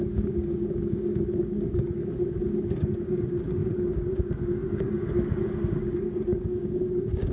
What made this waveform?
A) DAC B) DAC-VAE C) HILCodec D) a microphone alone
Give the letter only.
A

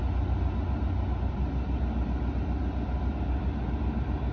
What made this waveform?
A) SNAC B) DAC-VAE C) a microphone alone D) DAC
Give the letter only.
C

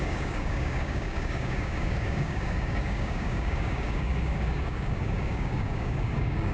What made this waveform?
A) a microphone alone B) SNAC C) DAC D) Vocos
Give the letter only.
C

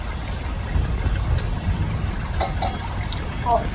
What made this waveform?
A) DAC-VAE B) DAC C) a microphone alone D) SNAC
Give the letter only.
C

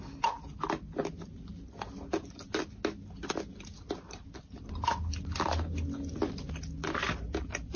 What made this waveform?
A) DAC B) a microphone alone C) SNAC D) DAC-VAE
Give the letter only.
B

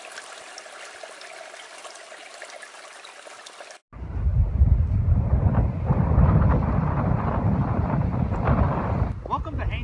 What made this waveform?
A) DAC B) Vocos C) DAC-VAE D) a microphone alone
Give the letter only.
D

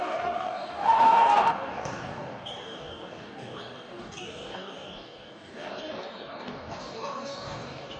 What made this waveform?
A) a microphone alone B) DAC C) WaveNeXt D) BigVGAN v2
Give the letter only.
B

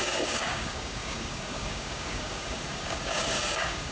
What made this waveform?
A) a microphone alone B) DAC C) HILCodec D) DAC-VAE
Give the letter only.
B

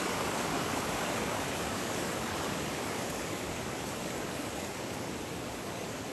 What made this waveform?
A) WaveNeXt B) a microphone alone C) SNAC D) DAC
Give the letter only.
D